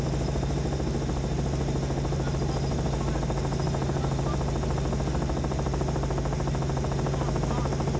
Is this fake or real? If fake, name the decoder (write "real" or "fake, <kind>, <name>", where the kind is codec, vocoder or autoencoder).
real